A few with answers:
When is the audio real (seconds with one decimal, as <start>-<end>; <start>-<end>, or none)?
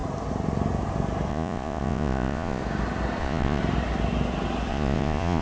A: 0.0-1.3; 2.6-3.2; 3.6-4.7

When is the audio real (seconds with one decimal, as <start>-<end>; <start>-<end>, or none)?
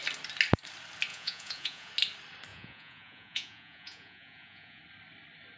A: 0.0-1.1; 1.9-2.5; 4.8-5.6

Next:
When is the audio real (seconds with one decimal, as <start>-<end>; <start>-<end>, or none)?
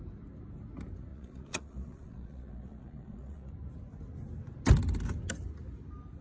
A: 0.0-1.1; 3.5-6.2